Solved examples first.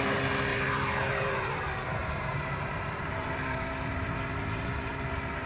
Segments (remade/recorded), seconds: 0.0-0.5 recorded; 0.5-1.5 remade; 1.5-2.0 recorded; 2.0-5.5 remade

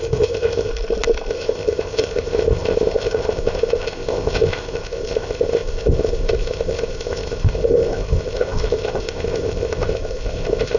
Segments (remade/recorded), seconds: 0.0-0.7 remade; 0.7-1.3 recorded; 1.3-10.8 remade

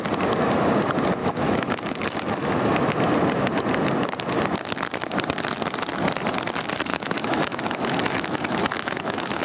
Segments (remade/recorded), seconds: 0.0-1.2 recorded; 1.2-2.9 remade; 2.9-6.9 recorded; 6.9-9.4 remade

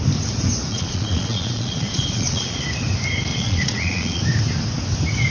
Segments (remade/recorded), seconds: 0.0-0.7 recorded; 0.7-2.6 remade; 2.6-3.3 recorded; 3.3-4.2 remade; 4.2-5.3 recorded

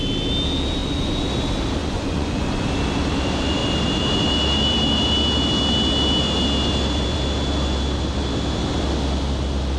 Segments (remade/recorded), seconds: 0.0-0.8 recorded; 0.8-1.3 remade; 1.3-1.8 recorded; 1.8-2.7 remade; 2.7-9.8 recorded

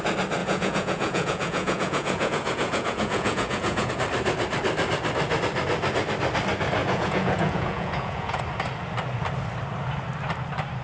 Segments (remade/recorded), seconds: 0.0-0.4 recorded; 0.4-3.9 remade; 3.9-6.8 recorded; 6.8-8.4 remade; 8.4-10.8 recorded

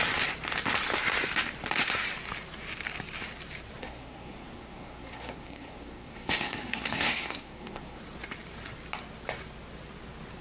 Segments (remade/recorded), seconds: 0.0-3.8 recorded; 3.8-8.0 remade; 8.0-10.4 recorded